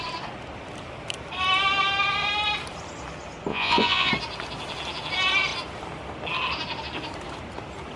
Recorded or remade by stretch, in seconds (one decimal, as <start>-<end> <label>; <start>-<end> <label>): 0.0-3.5 recorded; 3.5-4.1 remade; 4.1-8.0 recorded